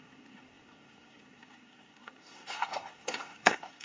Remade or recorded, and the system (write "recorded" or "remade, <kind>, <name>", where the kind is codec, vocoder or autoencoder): remade, codec, SNAC